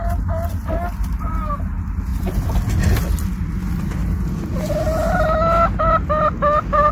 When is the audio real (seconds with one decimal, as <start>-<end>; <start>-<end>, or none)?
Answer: 0.0-6.9

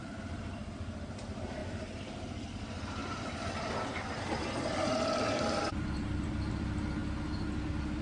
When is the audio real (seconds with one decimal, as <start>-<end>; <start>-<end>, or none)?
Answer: 1.6-2.5; 7.0-8.0

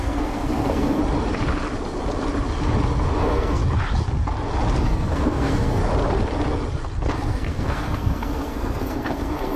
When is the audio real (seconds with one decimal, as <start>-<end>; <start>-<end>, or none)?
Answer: 1.0-3.2; 3.6-4.8; 5.8-7.1

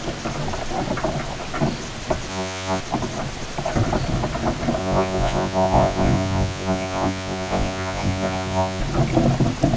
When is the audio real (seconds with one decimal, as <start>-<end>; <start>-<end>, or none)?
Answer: 0.0-2.3; 2.8-4.8; 8.8-9.8

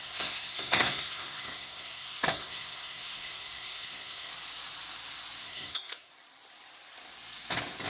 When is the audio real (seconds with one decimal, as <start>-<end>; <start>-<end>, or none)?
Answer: 4.3-5.4; 6.1-7.9